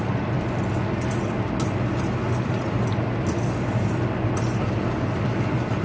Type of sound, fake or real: real